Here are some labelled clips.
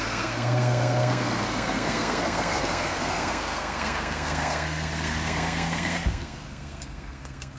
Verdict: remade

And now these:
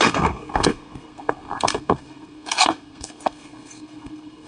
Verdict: remade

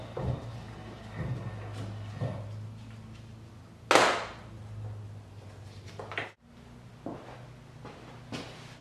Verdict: recorded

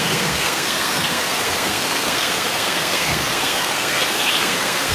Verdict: remade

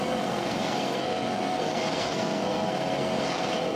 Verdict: remade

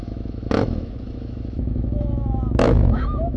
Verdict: remade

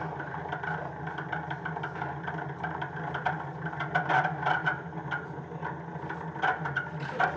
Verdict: recorded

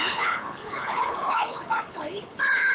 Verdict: remade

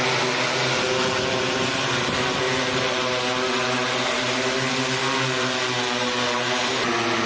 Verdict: recorded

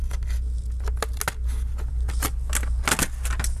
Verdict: recorded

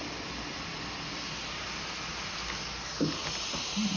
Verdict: recorded